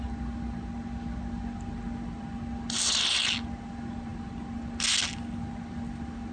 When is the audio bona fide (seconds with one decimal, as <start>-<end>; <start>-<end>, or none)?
0.0-6.3